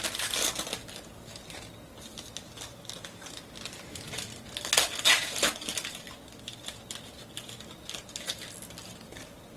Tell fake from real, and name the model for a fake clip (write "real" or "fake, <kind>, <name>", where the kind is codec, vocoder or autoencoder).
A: real